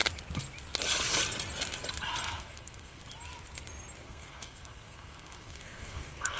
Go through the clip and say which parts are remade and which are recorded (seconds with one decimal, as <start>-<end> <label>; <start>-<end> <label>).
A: 0.0-2.3 recorded; 2.3-3.0 remade; 3.0-4.0 recorded; 4.0-6.4 remade